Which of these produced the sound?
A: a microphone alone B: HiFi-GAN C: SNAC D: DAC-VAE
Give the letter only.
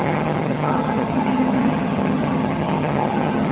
B